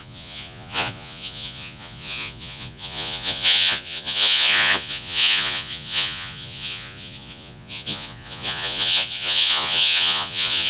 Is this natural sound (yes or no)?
no